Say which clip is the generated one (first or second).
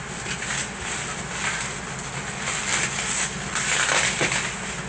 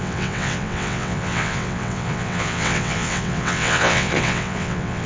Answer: second